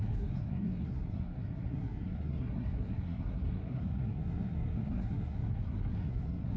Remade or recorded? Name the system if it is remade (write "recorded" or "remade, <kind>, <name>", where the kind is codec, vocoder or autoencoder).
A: remade, codec, SNAC